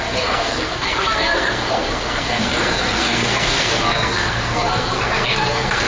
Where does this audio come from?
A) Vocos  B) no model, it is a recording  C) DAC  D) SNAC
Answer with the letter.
D